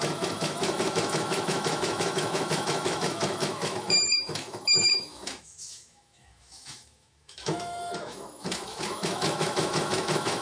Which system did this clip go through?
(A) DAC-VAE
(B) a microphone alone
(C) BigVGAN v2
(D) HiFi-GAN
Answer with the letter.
A